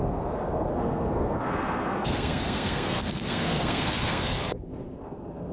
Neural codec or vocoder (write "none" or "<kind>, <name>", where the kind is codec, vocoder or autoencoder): codec, SNAC